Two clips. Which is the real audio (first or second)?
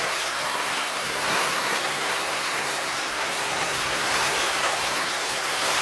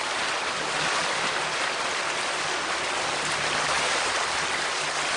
second